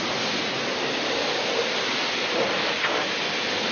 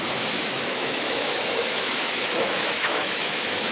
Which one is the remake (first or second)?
second